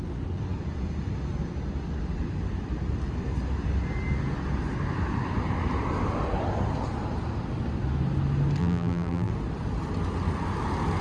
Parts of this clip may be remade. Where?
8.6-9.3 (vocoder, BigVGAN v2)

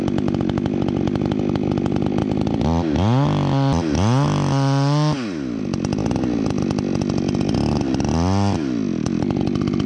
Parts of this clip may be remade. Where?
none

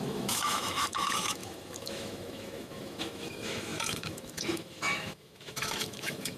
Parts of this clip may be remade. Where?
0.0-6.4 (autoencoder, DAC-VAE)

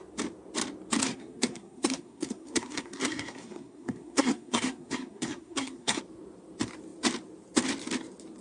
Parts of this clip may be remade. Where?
1.0-6.0 (codec, SNAC)

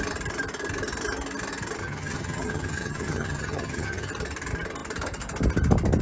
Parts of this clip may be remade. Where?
1.8-4.1 (vocoder, HiFi-GAN)

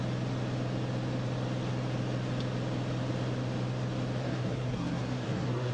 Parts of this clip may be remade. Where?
4.2-5.7 (codec, SNAC)